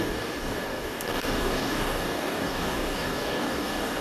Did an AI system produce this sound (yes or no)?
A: yes